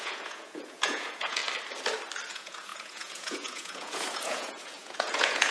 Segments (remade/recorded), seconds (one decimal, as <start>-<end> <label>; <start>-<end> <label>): 0.0-1.4 remade; 1.4-2.3 recorded; 2.3-5.5 remade